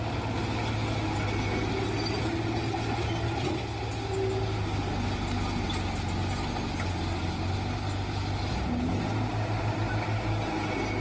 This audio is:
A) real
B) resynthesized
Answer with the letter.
A